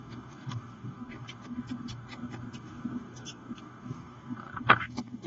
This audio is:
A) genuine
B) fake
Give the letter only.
B